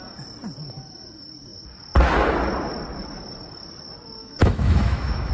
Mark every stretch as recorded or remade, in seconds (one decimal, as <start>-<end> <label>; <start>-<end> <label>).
0.0-4.2 recorded; 4.2-5.3 remade

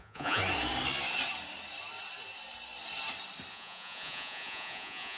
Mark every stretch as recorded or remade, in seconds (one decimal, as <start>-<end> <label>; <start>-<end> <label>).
0.0-0.4 remade; 0.4-3.5 recorded; 3.5-5.2 remade

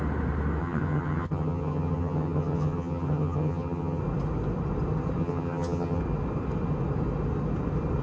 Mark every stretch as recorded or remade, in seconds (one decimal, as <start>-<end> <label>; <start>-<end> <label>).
0.0-0.6 recorded; 0.6-4.0 remade; 4.0-5.2 recorded; 5.2-6.0 remade; 6.0-8.0 recorded

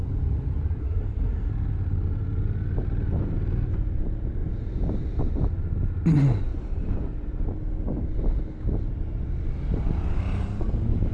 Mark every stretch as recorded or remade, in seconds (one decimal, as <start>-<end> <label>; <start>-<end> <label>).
0.0-0.8 recorded; 0.8-1.5 remade; 1.5-11.1 recorded

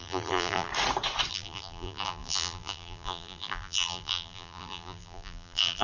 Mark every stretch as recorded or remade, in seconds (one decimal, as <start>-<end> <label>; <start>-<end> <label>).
0.0-0.7 remade; 0.7-1.3 recorded; 1.3-5.8 remade

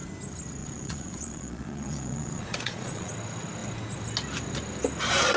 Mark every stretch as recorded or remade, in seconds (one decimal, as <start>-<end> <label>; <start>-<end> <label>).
0.0-0.6 recorded; 0.6-3.1 remade; 3.1-5.4 recorded